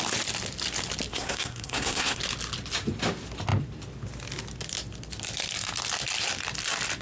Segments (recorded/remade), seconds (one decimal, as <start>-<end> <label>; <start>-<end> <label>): 0.0-1.1 recorded; 1.1-2.2 remade; 2.2-7.0 recorded